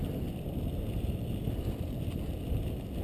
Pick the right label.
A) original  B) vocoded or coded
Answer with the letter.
A